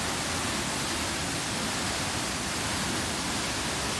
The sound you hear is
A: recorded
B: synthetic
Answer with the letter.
A